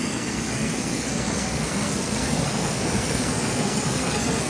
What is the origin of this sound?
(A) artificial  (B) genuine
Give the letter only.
A